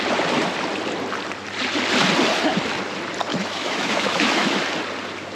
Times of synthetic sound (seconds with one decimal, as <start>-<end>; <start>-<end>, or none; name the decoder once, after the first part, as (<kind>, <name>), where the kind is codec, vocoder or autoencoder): 3.3-4.6 (autoencoder, DAC-VAE)